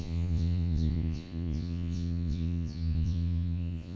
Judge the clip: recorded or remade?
remade